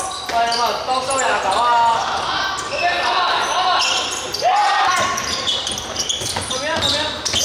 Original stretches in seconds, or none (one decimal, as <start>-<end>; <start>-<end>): 0.0-4.6; 5.8-7.4